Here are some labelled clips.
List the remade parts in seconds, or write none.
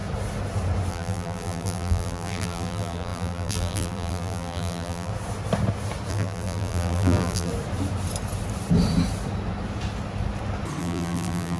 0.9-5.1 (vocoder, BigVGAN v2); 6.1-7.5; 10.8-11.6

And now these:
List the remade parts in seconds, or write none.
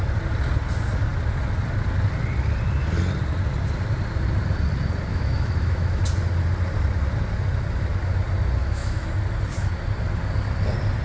5.1-6.0 (autoencoder, DAC-VAE); 8.6-9.1